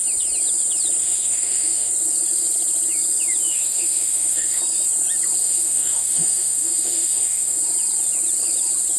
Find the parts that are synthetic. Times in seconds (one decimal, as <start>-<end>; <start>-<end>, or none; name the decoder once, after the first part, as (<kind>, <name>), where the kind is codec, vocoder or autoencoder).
1.0-1.9 (autoencoder, DAC-VAE); 3.5-4.6; 5.4-7.6